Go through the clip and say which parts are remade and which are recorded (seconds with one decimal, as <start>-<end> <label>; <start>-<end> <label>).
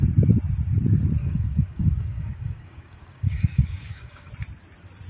0.0-1.2 recorded; 1.2-4.3 remade; 4.3-5.1 recorded